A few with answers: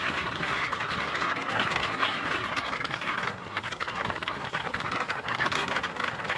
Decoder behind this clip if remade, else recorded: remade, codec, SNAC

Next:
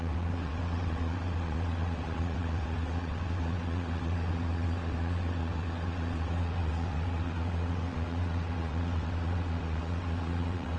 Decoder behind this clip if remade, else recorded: remade, vocoder, WaveNeXt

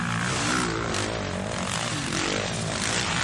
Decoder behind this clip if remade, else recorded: recorded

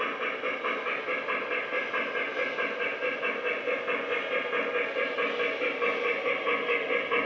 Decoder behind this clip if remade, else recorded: recorded